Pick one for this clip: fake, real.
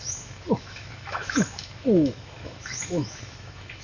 fake